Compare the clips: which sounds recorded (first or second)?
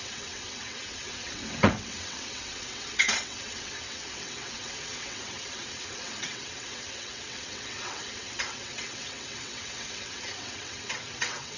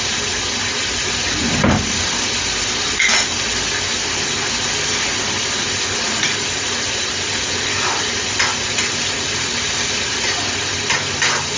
second